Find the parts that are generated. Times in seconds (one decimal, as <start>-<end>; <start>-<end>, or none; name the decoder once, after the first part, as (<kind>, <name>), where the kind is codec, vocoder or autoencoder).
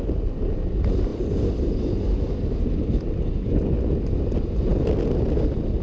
none